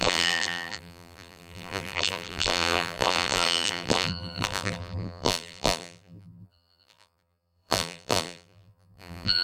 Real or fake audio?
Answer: fake